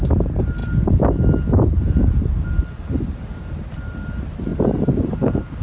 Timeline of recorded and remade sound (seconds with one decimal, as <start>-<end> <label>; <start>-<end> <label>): 0.0-5.6 recorded